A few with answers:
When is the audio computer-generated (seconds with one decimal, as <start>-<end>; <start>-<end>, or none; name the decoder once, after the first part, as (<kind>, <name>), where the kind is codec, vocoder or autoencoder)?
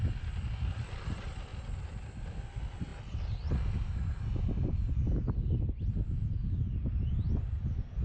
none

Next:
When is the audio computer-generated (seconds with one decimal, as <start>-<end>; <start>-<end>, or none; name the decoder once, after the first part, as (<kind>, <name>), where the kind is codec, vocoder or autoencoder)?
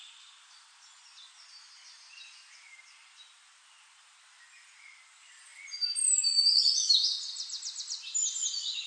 none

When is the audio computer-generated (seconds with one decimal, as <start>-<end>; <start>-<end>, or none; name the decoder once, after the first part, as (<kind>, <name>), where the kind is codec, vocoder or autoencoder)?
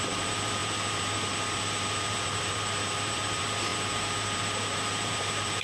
0.0-5.6 (vocoder, BigVGAN v2)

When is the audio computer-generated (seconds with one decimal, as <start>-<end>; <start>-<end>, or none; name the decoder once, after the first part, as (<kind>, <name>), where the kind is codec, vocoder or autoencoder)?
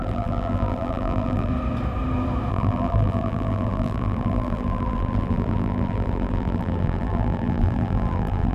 0.0-1.5 (vocoder, BigVGAN v2); 2.5-8.5